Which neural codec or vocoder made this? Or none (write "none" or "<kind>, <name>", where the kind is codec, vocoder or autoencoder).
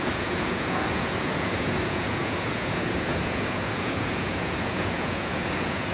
vocoder, Vocos